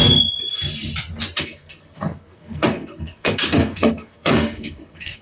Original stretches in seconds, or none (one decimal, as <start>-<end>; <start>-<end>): 0.0-1.4